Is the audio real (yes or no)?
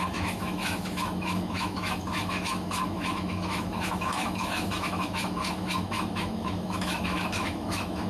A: no